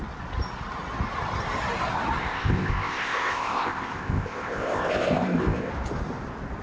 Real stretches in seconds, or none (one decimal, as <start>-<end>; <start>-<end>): 0.0-2.2; 5.7-6.6